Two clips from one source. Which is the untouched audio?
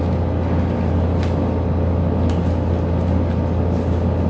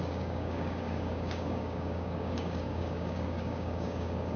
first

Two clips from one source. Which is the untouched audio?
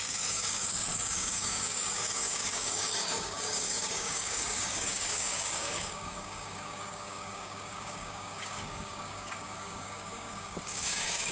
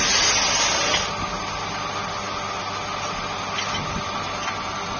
second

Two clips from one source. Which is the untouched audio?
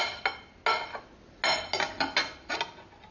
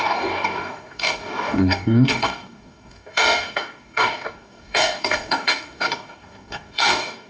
first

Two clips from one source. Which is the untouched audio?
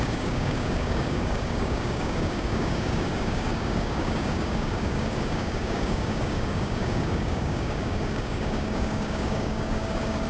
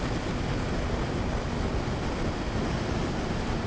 second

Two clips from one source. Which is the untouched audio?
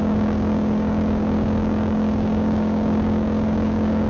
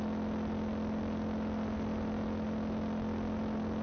second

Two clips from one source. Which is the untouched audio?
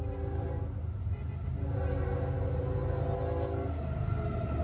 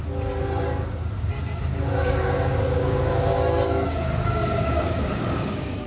first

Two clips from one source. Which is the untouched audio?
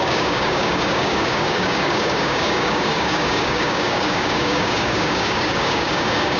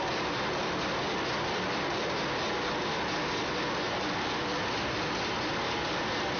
second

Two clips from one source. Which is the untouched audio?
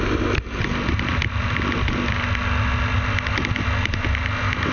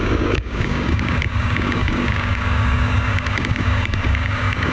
first